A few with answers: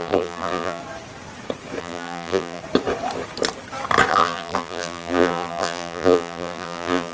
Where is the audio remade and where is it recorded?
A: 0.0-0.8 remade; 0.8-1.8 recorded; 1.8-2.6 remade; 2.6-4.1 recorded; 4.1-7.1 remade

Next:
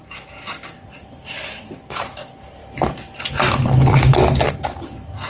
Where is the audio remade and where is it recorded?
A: 0.0-5.3 recorded

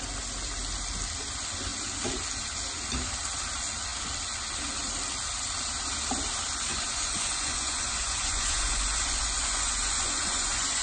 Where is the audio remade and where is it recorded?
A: 0.0-6.7 recorded; 6.7-10.8 remade

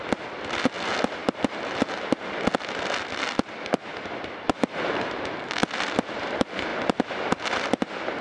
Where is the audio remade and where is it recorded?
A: 0.0-3.9 recorded; 3.9-5.1 remade; 5.1-8.2 recorded

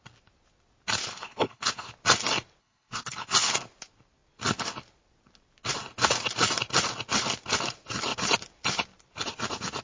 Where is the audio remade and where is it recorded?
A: 0.0-1.1 recorded; 1.1-1.9 remade; 1.9-2.6 recorded; 2.6-3.5 remade; 3.5-9.8 recorded

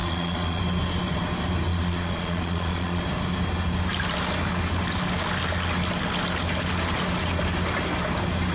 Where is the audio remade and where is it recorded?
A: 0.0-0.6 remade; 0.6-1.7 recorded; 1.7-3.0 remade; 3.0-8.5 recorded

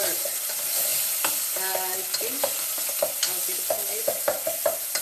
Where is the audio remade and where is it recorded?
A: 0.0-0.9 recorded; 0.9-3.9 remade; 3.9-5.0 recorded